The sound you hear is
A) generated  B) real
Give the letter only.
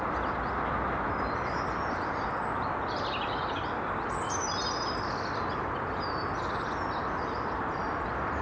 B